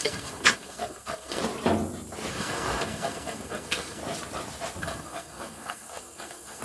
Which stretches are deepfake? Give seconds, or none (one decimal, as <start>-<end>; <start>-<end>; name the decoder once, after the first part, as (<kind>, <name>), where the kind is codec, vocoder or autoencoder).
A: 0.0-1.4 (codec, SNAC); 2.3-4.0; 4.8-6.6